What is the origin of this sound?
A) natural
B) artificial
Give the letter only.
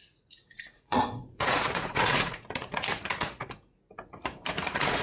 B